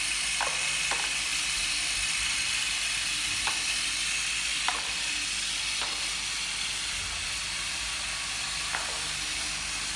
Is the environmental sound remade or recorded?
recorded